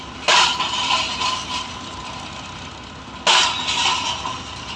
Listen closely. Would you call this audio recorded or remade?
recorded